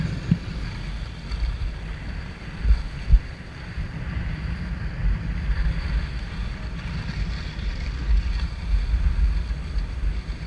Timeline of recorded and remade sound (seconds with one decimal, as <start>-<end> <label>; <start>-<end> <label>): 0.0-10.5 recorded